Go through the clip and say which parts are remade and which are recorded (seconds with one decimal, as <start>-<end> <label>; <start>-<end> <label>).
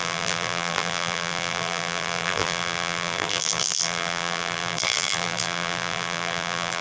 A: 0.0-6.8 remade